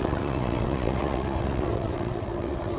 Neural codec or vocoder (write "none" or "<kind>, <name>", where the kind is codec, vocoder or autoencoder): vocoder, WaveNeXt